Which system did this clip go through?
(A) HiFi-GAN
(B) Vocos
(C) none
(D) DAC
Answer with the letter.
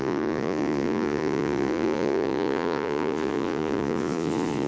B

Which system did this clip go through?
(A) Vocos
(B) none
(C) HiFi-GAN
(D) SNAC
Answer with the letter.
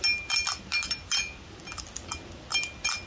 B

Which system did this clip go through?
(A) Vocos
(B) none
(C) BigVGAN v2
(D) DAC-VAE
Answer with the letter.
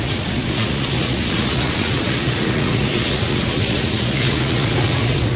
A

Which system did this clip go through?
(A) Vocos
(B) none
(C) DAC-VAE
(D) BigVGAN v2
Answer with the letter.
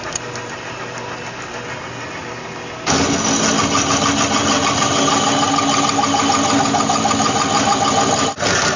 B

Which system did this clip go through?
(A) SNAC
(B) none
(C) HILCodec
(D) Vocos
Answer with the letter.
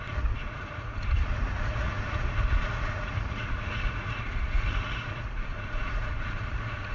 D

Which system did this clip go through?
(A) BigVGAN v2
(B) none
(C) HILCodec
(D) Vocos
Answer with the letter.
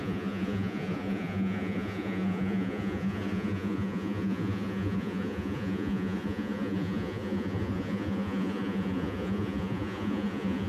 D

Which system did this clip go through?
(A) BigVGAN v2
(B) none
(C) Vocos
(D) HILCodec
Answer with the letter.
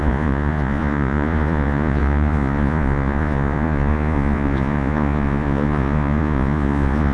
C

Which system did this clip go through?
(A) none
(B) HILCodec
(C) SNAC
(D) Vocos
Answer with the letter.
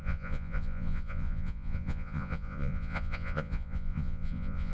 D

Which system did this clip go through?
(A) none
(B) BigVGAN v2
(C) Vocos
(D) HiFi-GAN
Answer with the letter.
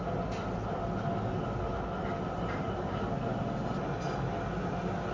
A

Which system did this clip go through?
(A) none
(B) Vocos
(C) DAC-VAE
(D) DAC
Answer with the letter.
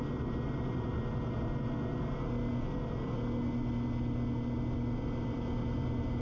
A